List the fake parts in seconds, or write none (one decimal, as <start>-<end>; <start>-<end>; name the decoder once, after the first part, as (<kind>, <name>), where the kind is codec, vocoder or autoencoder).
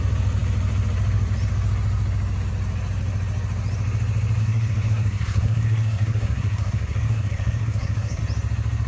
4.4-8.2 (codec, SNAC)